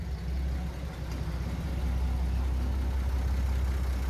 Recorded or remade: recorded